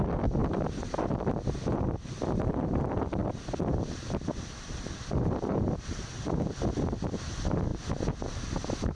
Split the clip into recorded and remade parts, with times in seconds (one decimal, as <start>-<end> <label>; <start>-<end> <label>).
0.0-3.2 remade; 3.2-4.6 recorded; 4.6-8.9 remade